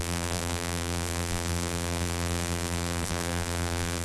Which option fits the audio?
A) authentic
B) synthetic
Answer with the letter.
B